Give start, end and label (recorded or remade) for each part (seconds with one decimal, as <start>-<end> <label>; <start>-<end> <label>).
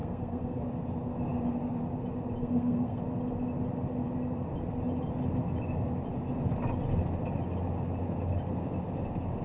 0.0-0.6 remade; 0.6-2.4 recorded; 2.4-3.0 remade; 3.0-9.4 recorded